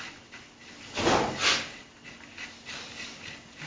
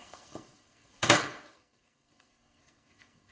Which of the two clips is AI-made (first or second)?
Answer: second